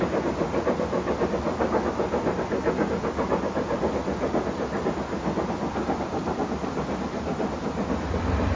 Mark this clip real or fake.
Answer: real